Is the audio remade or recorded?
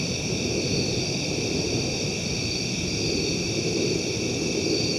recorded